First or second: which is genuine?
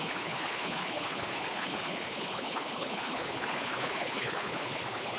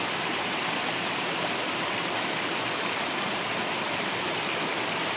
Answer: second